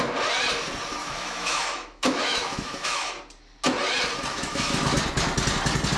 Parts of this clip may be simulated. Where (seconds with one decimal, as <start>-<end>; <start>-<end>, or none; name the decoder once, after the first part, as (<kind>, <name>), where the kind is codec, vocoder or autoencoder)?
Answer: 1.0-3.1 (autoencoder, DAC-VAE); 4.3-5.0